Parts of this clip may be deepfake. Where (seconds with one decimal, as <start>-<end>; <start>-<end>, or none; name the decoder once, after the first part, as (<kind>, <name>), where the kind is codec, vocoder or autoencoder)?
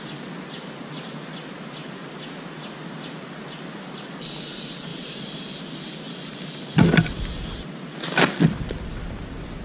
4.9-7.9 (vocoder, BigVGAN v2)